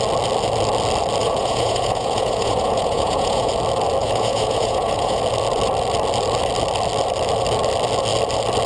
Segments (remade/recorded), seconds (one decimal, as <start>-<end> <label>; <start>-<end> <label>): 0.0-1.2 recorded; 1.2-3.5 remade; 3.5-4.0 recorded; 4.0-5.2 remade; 5.2-8.7 recorded